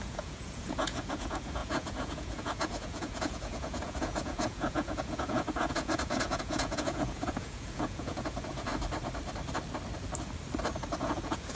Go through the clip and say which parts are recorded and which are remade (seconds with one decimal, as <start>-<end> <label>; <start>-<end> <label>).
0.0-8.7 remade; 8.7-11.0 recorded; 11.0-11.6 remade